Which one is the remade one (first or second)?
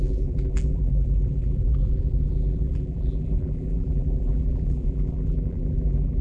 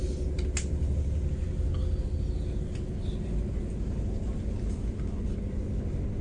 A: first